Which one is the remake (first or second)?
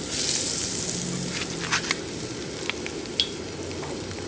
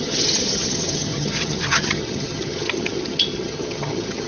second